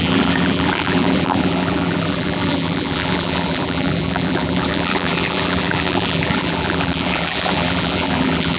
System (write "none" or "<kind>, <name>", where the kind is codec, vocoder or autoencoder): vocoder, BigVGAN v2